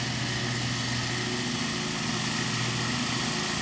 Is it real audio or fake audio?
real